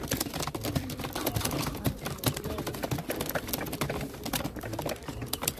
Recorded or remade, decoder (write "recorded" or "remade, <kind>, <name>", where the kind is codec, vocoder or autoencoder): remade, vocoder, BigVGAN v2